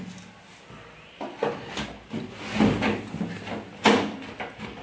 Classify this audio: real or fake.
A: real